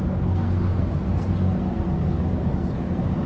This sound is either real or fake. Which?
fake